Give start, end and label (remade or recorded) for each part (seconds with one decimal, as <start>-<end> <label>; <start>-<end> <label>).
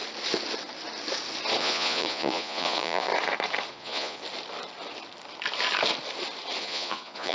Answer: 0.0-1.6 recorded; 1.6-3.1 remade; 3.1-3.7 recorded; 3.7-4.2 remade; 4.2-6.6 recorded; 6.6-7.3 remade